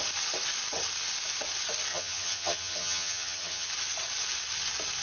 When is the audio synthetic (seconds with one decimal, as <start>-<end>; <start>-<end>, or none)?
1.9-3.7